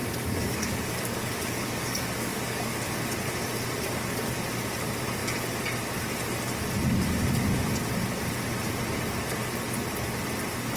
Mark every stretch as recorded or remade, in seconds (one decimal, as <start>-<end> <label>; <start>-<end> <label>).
0.0-2.8 remade; 2.8-10.8 recorded